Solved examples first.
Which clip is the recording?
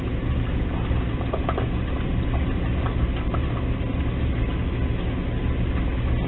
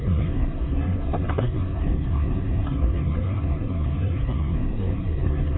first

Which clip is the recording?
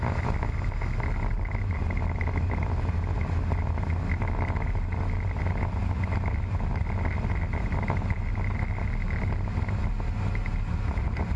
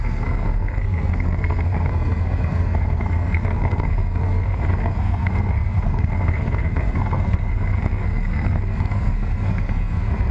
first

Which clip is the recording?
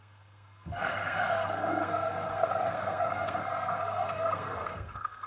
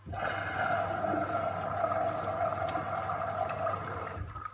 second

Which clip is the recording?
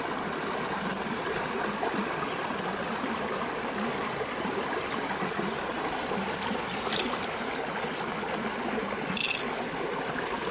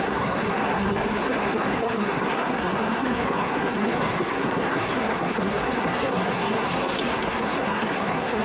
first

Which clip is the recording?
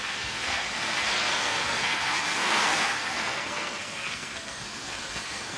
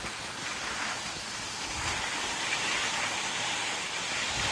second